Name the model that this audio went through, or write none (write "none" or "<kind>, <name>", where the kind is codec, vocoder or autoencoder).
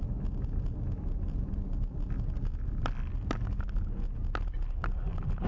none